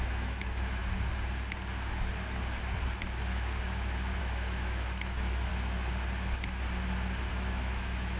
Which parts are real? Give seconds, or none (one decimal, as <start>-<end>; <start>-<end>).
0.8-4.2; 5.5-7.3